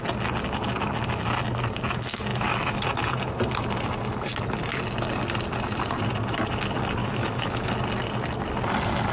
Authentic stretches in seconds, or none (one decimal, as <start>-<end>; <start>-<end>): 0.0-2.3; 2.8-7.0; 7.7-9.1